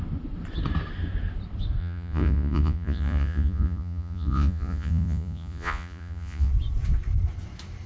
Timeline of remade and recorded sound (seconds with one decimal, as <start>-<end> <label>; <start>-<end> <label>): 0.0-1.8 recorded; 1.8-6.5 remade; 6.5-7.9 recorded